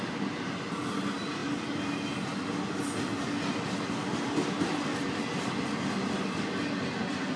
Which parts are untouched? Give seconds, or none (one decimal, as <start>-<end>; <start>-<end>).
0.0-7.4